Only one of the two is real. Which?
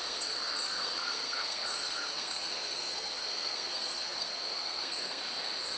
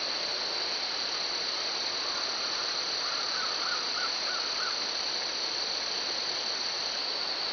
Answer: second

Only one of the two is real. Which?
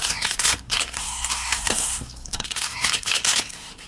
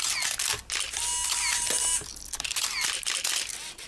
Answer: second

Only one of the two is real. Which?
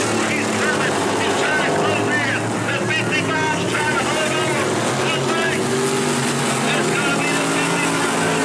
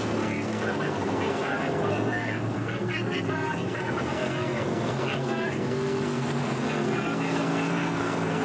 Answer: first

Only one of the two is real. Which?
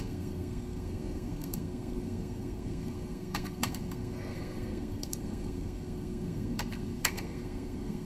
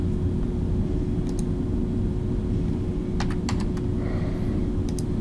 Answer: second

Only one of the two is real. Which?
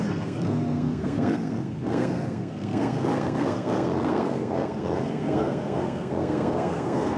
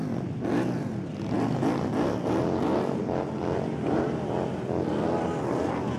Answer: second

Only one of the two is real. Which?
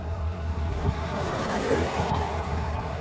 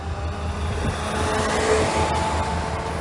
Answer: second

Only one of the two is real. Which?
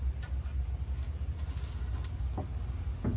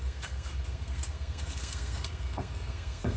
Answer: first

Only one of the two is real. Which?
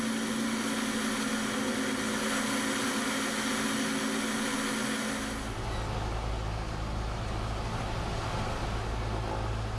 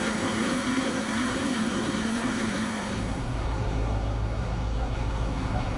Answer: first